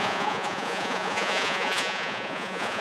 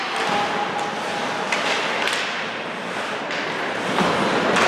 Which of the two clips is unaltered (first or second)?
second